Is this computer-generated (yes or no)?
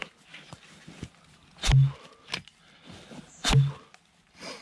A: no